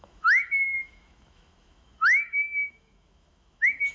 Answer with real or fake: fake